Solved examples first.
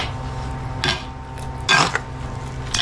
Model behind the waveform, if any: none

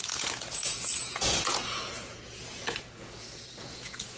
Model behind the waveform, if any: vocoder, Vocos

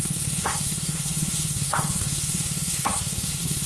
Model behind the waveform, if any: codec, SNAC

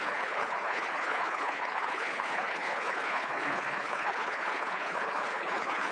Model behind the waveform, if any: codec, HILCodec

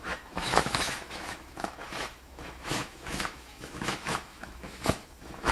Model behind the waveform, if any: autoencoder, DAC-VAE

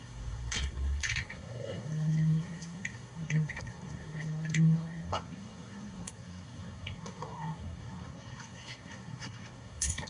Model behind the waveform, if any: codec, SNAC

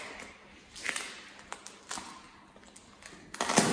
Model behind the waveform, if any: none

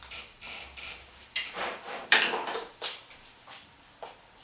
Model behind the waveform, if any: vocoder, BigVGAN v2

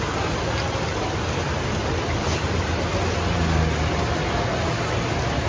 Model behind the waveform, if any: none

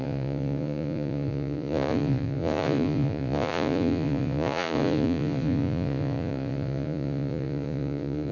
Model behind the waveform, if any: vocoder, Vocos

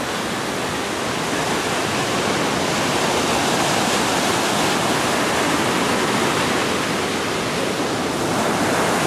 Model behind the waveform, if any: none